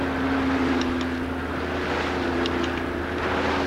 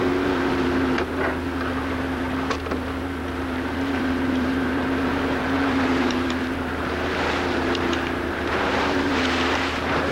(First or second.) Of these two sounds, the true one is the first